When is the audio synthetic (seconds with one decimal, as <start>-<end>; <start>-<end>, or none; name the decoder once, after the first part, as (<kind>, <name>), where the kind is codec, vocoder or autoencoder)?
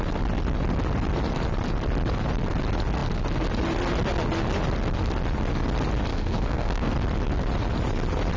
6.1-6.9 (codec, SNAC)